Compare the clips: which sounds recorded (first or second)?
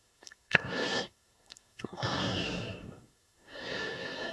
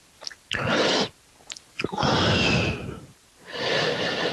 second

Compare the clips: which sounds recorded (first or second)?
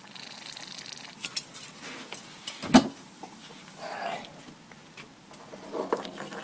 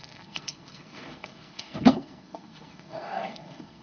first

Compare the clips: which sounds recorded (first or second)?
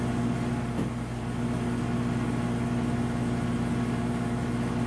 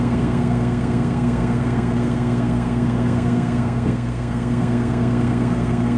first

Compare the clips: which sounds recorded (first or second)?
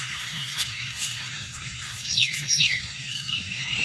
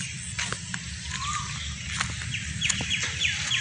second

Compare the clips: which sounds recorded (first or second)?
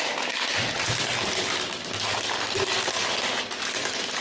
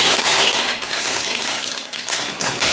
first